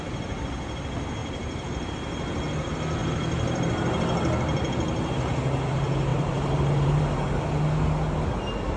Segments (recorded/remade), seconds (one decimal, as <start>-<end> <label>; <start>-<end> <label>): 0.0-1.2 recorded; 1.2-1.9 remade; 1.9-3.0 recorded; 3.0-3.7 remade; 3.7-6.1 recorded; 6.1-7.0 remade; 7.0-8.8 recorded